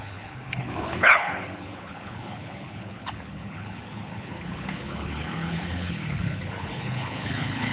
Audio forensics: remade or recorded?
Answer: remade